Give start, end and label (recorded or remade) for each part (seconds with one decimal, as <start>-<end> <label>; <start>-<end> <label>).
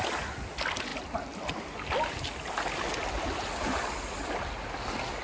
0.0-5.2 recorded